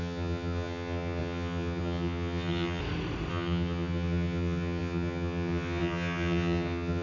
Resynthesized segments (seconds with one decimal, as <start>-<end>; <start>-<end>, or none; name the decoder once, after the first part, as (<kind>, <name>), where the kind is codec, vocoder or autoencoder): 0.0-2.8 (vocoder, HiFi-GAN); 3.3-7.0